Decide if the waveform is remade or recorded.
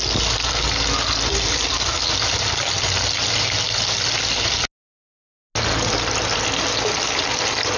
recorded